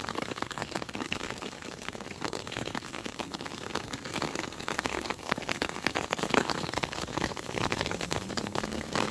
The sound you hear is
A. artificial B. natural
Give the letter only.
A